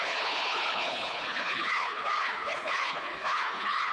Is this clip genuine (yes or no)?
no